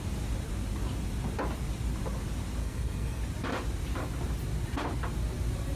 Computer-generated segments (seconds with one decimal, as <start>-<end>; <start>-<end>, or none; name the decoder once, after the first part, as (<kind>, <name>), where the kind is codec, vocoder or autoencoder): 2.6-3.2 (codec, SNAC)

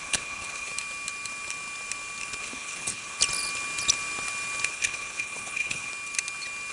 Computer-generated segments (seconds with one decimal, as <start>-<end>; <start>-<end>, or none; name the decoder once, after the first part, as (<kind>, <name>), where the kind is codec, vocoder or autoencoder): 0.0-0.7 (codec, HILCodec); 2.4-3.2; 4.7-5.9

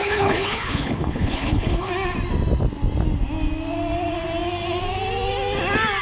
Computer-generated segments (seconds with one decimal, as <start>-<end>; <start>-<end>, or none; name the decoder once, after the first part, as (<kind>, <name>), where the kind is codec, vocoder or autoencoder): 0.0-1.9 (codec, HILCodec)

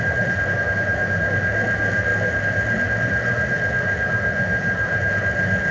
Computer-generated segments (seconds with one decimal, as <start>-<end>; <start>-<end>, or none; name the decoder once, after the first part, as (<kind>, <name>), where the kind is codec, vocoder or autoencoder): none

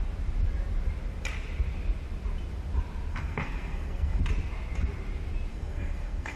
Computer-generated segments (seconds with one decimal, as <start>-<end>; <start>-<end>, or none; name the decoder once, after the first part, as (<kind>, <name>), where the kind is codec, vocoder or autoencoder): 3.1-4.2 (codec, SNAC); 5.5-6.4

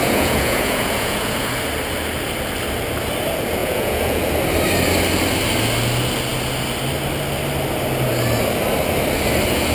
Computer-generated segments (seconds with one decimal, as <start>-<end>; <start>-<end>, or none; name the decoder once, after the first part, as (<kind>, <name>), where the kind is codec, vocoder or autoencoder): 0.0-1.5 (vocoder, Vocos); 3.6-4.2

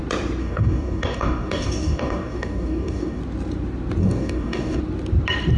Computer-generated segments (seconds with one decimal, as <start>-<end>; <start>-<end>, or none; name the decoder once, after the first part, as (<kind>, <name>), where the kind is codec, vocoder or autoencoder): 0.4-3.2 (codec, DAC); 4.0-4.8

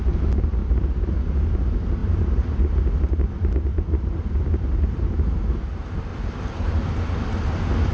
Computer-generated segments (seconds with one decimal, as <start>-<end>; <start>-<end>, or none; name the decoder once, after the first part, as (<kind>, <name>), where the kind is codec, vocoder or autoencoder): 0.6-1.1 (vocoder, BigVGAN v2); 2.0-2.8; 3.7-5.4; 6.1-6.7